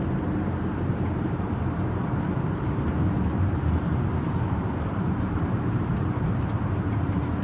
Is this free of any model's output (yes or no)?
no